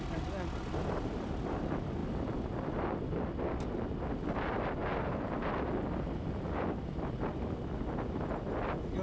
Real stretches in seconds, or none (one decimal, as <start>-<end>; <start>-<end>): 0.0-9.0